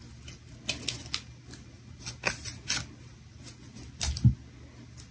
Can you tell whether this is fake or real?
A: real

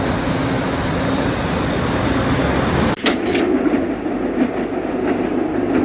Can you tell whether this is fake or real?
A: real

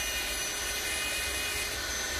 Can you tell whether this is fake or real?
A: real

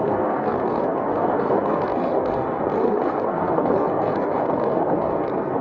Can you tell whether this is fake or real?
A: fake